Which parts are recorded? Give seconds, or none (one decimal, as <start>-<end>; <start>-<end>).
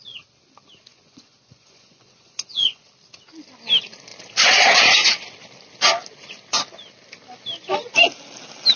0.0-0.9; 2.8-8.8